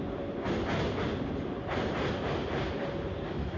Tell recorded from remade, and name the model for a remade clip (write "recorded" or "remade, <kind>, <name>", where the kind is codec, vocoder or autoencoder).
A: recorded